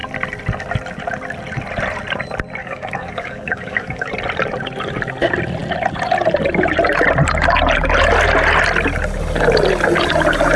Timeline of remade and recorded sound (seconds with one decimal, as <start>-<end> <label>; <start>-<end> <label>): 0.0-2.6 recorded; 2.6-4.1 remade; 4.1-10.6 recorded